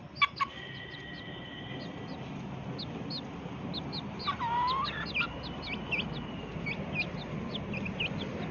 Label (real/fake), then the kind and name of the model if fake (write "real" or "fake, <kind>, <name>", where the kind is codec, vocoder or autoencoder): real